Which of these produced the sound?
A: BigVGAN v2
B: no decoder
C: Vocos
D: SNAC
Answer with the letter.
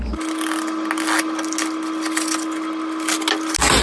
B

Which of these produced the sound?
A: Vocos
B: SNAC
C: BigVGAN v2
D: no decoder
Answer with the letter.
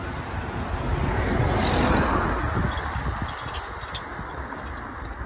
D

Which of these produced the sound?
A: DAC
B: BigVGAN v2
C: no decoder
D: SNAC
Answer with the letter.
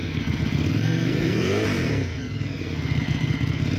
D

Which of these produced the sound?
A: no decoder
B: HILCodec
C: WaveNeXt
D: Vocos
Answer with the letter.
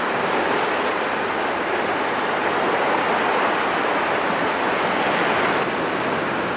A